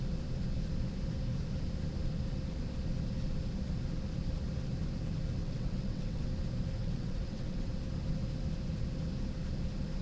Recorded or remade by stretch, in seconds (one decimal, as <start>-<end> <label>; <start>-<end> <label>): 0.0-5.4 recorded; 5.4-6.2 remade; 6.2-6.8 recorded; 6.8-7.7 remade; 7.7-10.0 recorded